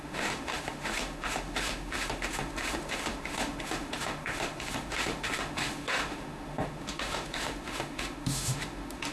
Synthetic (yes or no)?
yes